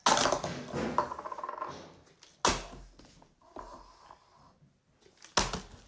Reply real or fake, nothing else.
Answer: real